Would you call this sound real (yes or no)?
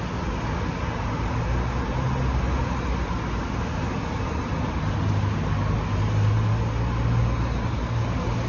yes